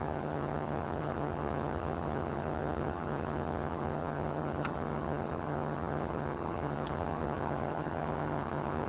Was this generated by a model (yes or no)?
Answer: yes